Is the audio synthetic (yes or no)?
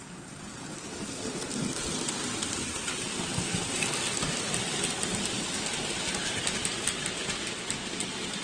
no